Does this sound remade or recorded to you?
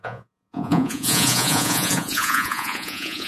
remade